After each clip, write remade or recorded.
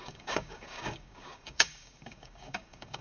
remade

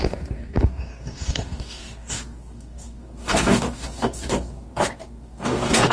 remade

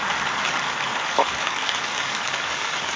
remade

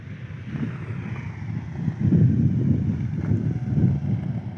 recorded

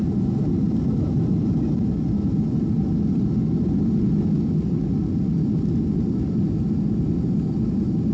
recorded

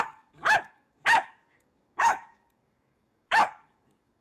remade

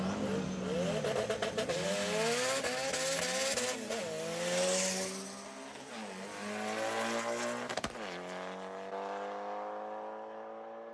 recorded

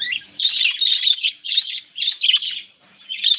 recorded